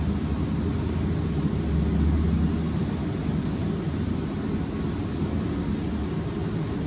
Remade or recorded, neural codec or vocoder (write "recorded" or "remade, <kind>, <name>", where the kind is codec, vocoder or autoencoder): recorded